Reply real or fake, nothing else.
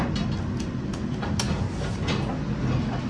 real